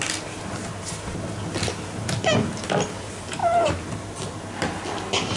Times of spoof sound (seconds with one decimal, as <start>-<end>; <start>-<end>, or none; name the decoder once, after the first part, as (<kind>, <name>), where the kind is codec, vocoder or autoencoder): none